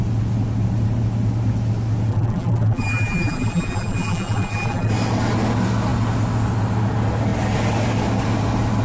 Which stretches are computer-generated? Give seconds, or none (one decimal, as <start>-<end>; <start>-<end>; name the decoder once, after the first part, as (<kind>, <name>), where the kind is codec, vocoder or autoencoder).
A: 2.1-4.9 (vocoder, BigVGAN v2)